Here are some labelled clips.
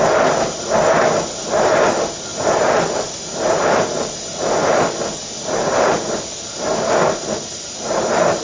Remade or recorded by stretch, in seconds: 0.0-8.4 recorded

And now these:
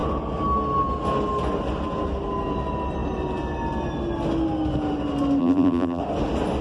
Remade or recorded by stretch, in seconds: 0.0-5.4 recorded; 5.4-6.0 remade; 6.0-6.6 recorded

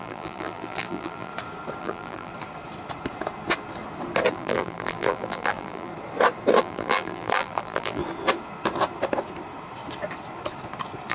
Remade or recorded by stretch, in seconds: 0.0-1.3 remade; 1.3-1.8 recorded; 1.8-2.3 remade; 2.3-4.3 recorded; 4.3-5.9 remade; 5.9-6.6 recorded; 6.6-8.0 remade; 8.0-11.1 recorded

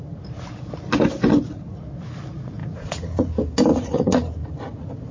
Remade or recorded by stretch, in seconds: 0.0-2.6 recorded; 2.6-3.3 remade; 3.3-3.7 recorded; 3.7-4.3 remade; 4.3-5.1 recorded

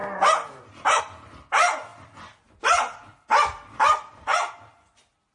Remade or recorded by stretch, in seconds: 0.0-5.3 recorded

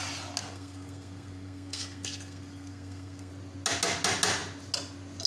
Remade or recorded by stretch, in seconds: 0.0-0.4 recorded; 0.4-3.3 remade; 3.3-5.3 recorded

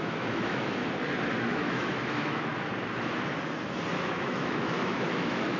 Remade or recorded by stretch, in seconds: 0.0-0.8 remade; 0.8-1.4 recorded; 1.4-2.5 remade; 2.5-3.9 recorded; 3.9-5.6 remade

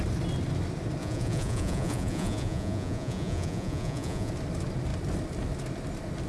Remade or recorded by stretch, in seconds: 0.0-1.0 recorded; 1.0-4.3 remade; 4.3-6.3 recorded